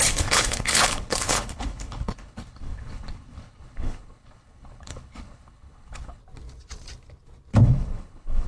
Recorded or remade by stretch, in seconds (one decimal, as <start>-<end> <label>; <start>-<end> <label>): 0.0-6.2 remade; 6.2-7.6 recorded; 7.6-8.5 remade